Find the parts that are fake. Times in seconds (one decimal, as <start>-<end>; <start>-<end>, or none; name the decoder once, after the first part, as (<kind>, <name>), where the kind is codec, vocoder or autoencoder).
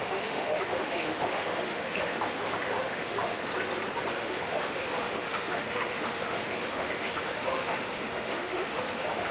0.0-3.5 (autoencoder, DAC-VAE); 4.1-9.3